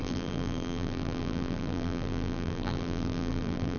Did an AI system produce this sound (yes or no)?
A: yes